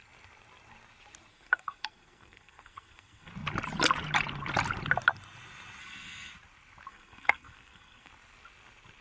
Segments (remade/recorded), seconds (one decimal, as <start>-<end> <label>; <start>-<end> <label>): 0.0-1.3 recorded; 1.3-3.3 remade; 3.3-5.8 recorded; 5.8-6.3 remade; 6.3-6.9 recorded; 6.9-8.1 remade; 8.1-9.0 recorded